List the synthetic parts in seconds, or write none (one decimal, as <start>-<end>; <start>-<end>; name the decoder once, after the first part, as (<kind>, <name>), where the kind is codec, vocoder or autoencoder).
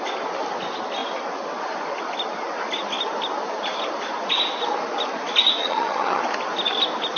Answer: 5.6-6.2 (vocoder, HiFi-GAN)